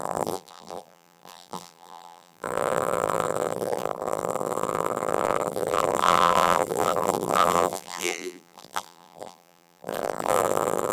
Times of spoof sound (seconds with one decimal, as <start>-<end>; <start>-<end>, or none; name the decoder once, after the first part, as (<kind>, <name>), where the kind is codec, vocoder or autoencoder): 0.0-10.9 (vocoder, BigVGAN v2)